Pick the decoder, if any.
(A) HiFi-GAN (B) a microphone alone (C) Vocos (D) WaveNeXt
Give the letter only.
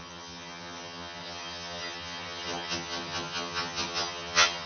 A